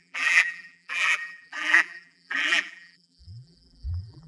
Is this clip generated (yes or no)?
yes